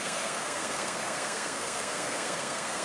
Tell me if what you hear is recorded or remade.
remade